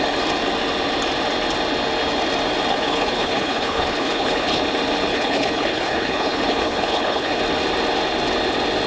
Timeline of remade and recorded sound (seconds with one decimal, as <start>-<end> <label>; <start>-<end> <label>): 0.0-2.7 recorded; 2.7-4.6 remade; 4.6-5.1 recorded; 5.1-7.4 remade; 7.4-8.9 recorded